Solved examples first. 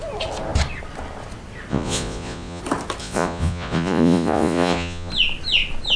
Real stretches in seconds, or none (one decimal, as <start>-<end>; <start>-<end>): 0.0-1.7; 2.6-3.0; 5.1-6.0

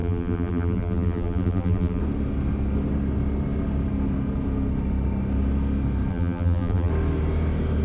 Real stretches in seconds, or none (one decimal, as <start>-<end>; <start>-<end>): 2.0-6.1; 6.9-7.8

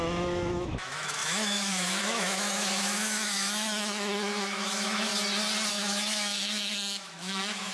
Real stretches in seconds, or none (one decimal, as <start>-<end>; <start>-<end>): 5.1-5.7